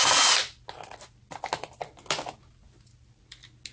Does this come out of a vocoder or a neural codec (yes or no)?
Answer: no